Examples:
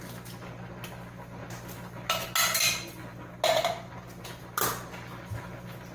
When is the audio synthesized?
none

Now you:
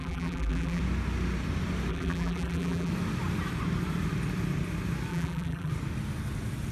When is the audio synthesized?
0.0-0.8 (vocoder, BigVGAN v2); 1.9-2.9; 5.1-5.7

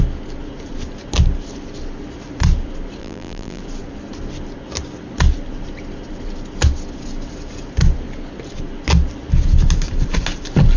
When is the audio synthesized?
3.0-3.6 (vocoder, BigVGAN v2)

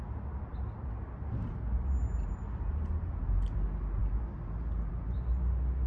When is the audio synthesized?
none

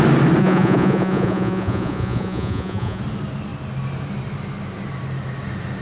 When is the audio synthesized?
0.4-3.0 (vocoder, Vocos)